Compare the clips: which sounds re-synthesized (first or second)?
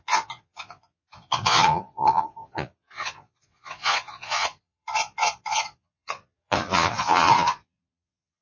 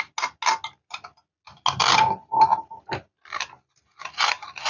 first